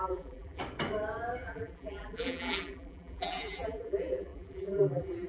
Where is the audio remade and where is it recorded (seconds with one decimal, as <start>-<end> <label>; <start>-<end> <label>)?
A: 0.0-0.6 remade; 0.6-1.4 recorded; 1.4-5.3 remade